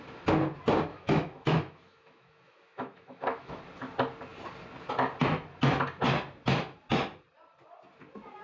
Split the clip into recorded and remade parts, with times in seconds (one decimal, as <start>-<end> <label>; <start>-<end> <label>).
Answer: 0.0-0.9 recorded; 0.9-3.6 remade; 3.6-8.4 recorded